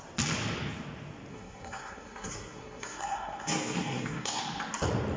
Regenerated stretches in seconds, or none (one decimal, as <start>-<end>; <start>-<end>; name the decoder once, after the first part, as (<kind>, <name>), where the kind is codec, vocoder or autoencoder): 1.3-4.4 (codec, SNAC)